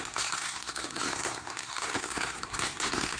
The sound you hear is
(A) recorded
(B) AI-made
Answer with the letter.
B